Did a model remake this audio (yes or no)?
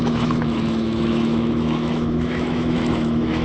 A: yes